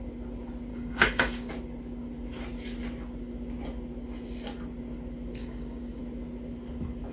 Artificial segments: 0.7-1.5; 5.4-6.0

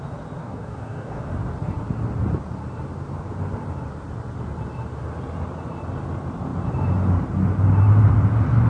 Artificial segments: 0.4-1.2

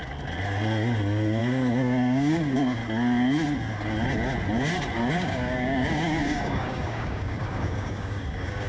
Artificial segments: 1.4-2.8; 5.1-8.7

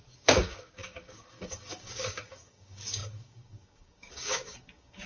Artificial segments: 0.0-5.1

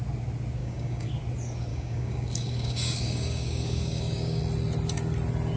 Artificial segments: 0.6-1.1; 1.7-4.4

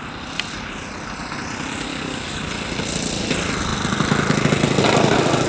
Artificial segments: 1.9-2.5

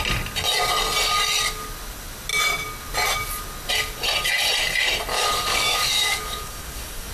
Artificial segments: 5.1-7.1

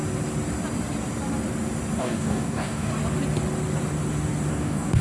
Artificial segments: 2.0-2.9; 4.5-5.0